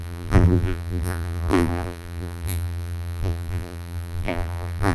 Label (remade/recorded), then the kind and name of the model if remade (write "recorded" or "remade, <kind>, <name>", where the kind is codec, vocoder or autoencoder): remade, vocoder, BigVGAN v2